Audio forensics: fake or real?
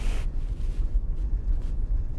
fake